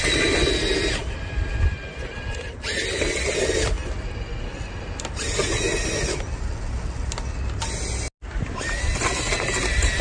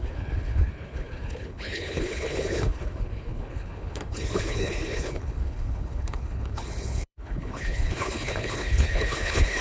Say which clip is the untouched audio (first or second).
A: first